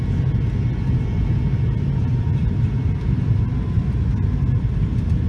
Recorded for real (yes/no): yes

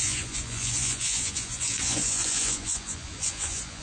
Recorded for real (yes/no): no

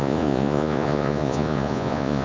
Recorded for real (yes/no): no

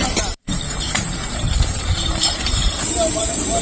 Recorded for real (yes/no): no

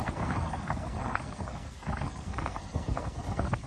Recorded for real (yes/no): no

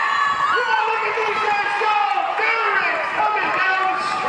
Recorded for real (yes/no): yes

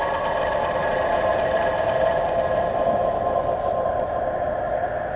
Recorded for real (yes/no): yes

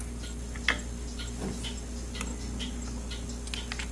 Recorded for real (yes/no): yes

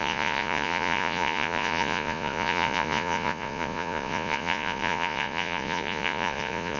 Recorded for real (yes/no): no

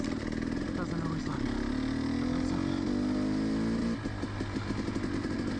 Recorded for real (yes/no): yes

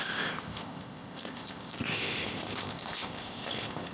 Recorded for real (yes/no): no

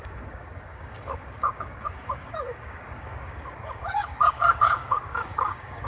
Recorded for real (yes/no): no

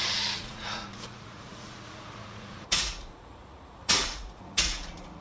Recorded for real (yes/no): no